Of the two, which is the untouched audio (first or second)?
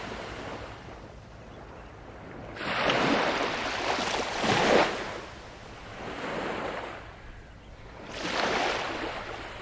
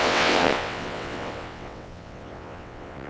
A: first